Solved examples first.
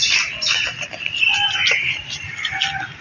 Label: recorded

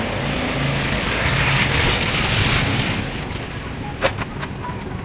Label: recorded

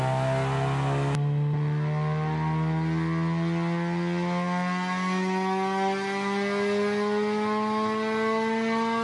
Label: recorded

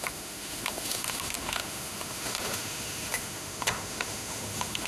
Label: remade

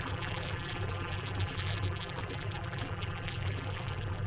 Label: remade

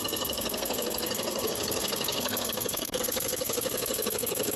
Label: remade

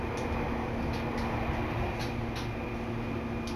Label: recorded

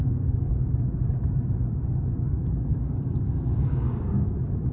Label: remade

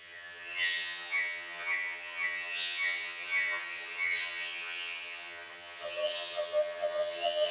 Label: remade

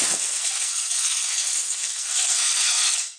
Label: remade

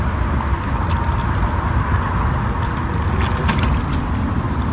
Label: recorded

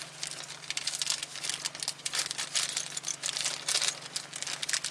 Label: recorded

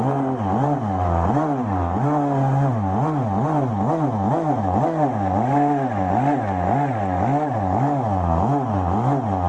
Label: recorded